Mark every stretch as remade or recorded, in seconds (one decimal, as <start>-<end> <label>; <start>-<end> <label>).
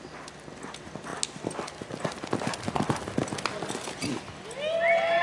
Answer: 0.0-5.2 recorded